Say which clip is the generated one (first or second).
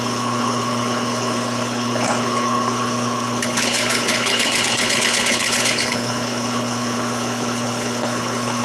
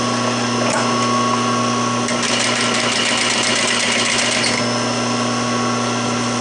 first